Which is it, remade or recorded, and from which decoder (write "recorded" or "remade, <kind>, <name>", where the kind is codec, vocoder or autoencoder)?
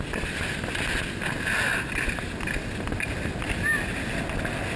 recorded